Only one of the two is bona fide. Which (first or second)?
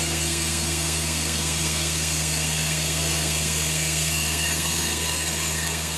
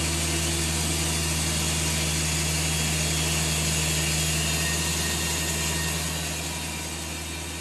second